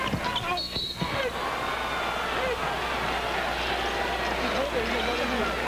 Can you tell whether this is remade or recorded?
recorded